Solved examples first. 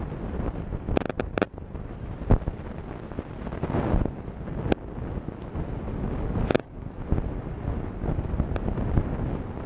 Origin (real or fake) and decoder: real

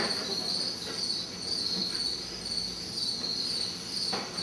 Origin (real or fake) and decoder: real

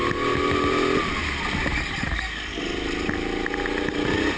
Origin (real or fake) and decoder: real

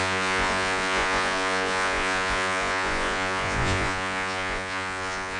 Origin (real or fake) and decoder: fake, vocoder, Vocos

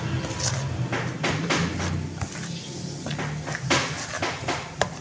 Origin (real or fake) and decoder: real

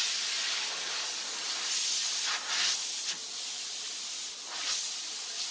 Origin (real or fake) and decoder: real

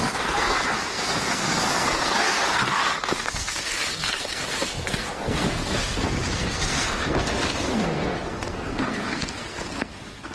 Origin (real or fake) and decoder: fake, codec, SNAC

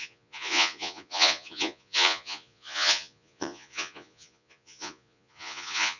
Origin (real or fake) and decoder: fake, vocoder, Vocos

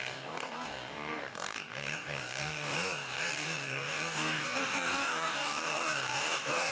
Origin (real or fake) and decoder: fake, codec, DAC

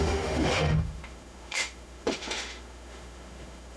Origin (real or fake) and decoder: fake, autoencoder, DAC-VAE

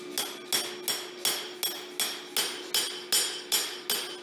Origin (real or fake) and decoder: real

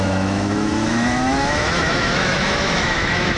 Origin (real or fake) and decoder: fake, autoencoder, DAC-VAE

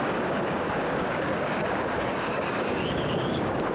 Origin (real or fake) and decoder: fake, codec, DAC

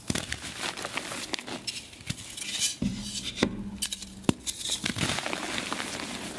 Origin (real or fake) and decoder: real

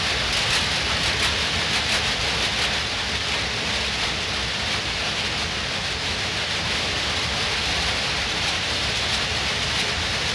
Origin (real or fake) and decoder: real